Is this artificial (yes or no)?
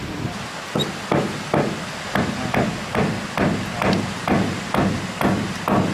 no